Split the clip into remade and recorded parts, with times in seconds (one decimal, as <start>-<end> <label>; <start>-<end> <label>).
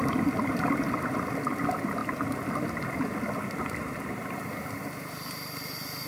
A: 0.0-6.1 recorded